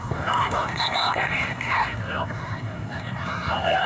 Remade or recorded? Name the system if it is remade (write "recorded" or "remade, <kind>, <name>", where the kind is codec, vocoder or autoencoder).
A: remade, codec, SNAC